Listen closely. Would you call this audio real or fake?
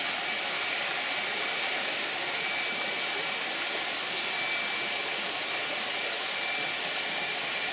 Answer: real